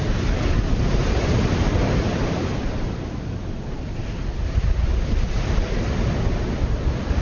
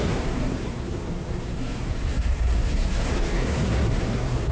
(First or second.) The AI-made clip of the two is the second